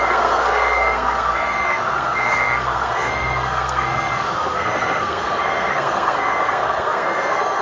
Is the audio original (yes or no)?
no